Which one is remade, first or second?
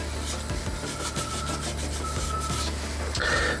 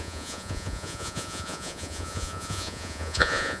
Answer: second